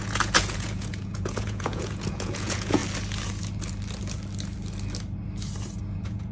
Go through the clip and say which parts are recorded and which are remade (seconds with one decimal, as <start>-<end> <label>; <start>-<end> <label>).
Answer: 0.0-2.8 remade; 2.8-5.8 recorded; 5.8-6.3 remade

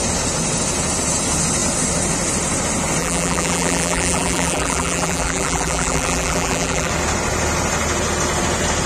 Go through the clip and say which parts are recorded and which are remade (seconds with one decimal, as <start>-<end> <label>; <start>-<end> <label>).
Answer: 0.0-3.0 recorded; 3.0-6.9 remade; 6.9-8.9 recorded

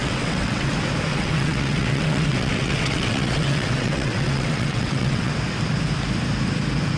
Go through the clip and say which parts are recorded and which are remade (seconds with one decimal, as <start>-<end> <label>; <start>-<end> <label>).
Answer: 0.0-0.7 remade; 0.7-1.1 recorded; 1.1-5.3 remade; 5.3-7.0 recorded

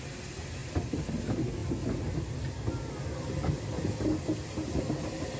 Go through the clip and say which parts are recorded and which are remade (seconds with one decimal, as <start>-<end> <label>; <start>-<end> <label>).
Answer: 0.0-5.4 recorded

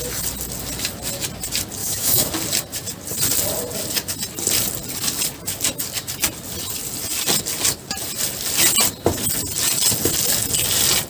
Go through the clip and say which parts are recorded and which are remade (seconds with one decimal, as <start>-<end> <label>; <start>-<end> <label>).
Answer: 0.0-1.8 recorded; 1.8-2.3 remade; 2.3-11.1 recorded

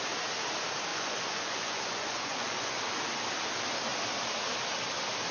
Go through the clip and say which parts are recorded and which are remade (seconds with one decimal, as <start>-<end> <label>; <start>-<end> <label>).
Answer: 0.0-0.9 recorded; 0.9-2.8 remade; 2.8-5.3 recorded